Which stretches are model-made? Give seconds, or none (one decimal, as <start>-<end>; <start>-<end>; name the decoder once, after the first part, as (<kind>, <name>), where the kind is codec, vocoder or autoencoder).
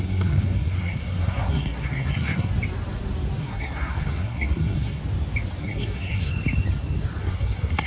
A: 0.0-2.5 (codec, SNAC); 3.4-5.0; 5.6-6.3; 7.2-7.9